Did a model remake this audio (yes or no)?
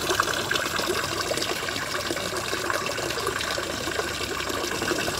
no